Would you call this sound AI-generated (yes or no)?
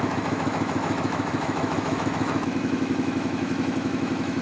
yes